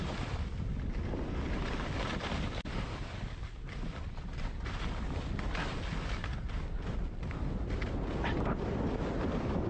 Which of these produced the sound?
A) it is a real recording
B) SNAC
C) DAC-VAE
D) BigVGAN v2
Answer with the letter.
A